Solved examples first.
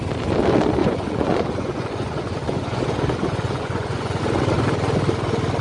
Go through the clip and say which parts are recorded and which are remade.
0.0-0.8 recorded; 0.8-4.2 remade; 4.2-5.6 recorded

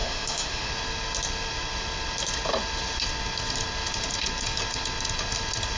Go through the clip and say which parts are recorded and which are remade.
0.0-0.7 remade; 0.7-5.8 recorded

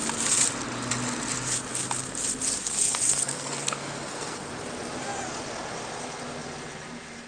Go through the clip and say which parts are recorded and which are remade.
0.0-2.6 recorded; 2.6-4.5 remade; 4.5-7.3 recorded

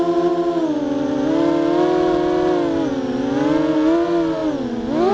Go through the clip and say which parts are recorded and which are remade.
0.0-5.1 recorded

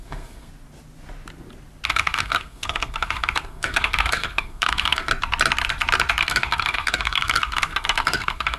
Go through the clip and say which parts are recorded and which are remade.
0.0-0.5 remade; 0.5-1.9 recorded; 1.9-5.1 remade; 5.1-6.2 recorded; 6.2-8.6 remade